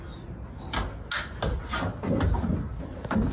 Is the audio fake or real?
real